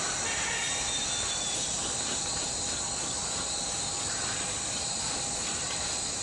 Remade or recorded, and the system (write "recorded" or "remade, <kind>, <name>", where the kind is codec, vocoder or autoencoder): recorded